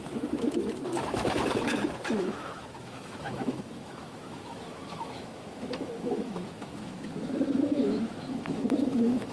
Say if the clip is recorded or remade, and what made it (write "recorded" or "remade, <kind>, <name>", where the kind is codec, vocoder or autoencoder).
remade, autoencoder, DAC-VAE